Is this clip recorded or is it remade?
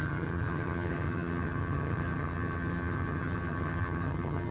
remade